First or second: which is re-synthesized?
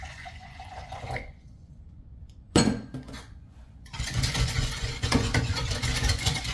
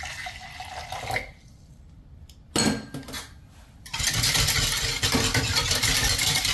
first